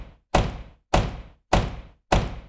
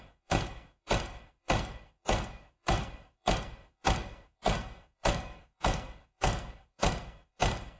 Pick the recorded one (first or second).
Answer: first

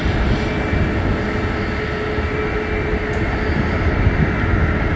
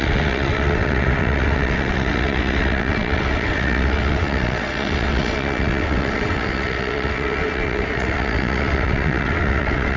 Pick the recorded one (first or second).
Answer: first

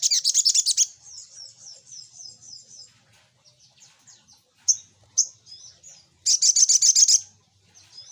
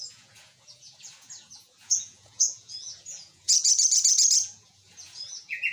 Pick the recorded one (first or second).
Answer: first